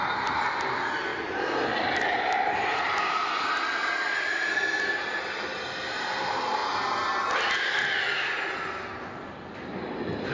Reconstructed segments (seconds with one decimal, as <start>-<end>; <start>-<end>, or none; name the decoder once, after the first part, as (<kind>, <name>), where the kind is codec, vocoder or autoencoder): none